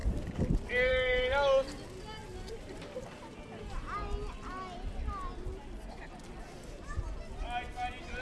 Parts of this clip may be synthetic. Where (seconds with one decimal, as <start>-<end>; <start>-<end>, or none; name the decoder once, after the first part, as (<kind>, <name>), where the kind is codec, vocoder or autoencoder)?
none